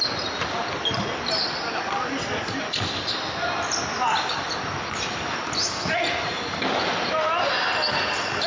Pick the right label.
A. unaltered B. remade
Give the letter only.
A